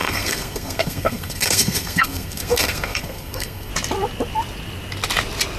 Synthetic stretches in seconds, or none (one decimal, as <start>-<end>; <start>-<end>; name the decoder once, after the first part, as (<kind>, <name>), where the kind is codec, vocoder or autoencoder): 0.0-3.7 (codec, SNAC)